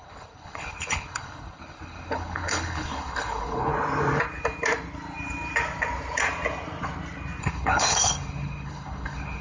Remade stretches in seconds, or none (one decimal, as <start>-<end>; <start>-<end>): 0.0-3.7; 7.4-9.4